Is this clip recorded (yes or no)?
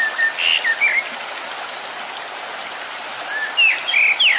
yes